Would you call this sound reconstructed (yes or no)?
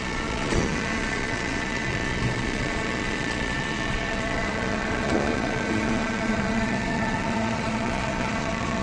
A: yes